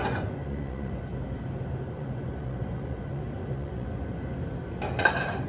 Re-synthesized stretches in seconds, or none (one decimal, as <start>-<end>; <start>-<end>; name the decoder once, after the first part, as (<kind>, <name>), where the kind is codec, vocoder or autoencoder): 0.0-1.1 (vocoder, Vocos); 1.9-4.2; 5.0-5.5